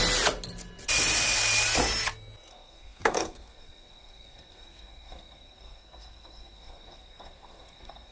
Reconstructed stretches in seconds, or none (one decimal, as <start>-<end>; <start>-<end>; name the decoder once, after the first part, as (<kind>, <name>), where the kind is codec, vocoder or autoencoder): 2.5-8.1 (codec, SNAC)